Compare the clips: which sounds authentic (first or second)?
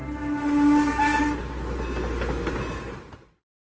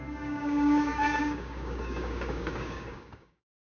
first